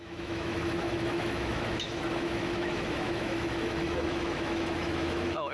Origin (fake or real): fake